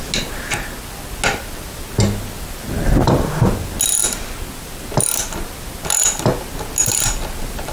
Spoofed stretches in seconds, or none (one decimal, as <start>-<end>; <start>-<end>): none